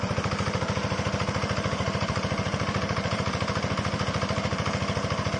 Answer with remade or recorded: remade